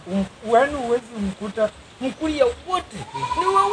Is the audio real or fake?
real